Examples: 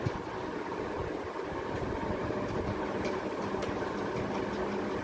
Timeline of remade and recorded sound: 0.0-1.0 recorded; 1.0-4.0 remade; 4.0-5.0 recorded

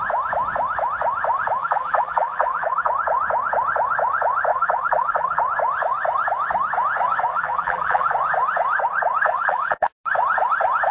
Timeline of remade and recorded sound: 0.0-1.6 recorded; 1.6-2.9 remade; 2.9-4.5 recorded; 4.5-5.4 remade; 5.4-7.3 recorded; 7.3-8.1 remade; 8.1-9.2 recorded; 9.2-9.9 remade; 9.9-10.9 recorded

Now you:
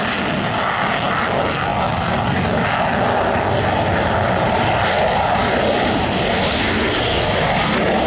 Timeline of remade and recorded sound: 0.0-8.1 recorded